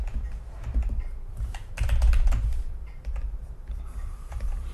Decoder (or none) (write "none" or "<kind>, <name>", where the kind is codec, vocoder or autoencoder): vocoder, BigVGAN v2